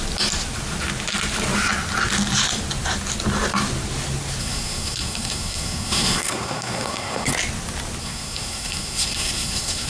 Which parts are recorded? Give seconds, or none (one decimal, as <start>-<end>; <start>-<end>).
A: 0.0-4.4; 7.3-8.0